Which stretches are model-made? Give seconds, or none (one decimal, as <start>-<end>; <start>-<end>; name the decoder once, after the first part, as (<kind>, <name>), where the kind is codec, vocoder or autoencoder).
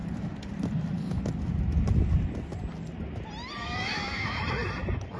3.6-4.4 (autoencoder, DAC-VAE)